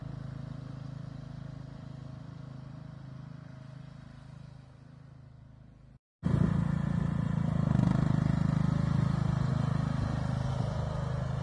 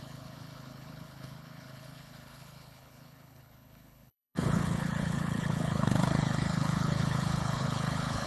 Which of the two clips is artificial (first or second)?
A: second